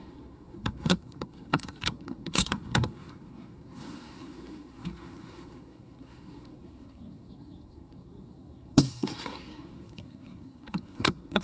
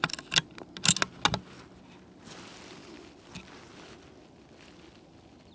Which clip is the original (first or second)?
second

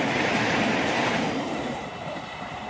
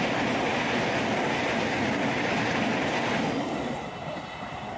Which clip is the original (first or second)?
second